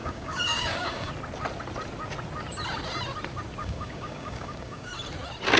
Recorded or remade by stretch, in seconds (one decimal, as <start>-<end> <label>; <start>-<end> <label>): 0.0-1.1 remade; 1.1-3.6 recorded; 3.6-4.9 remade; 4.9-5.6 recorded